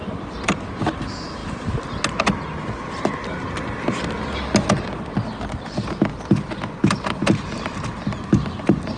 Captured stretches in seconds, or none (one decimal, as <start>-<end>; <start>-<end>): 0.6-9.0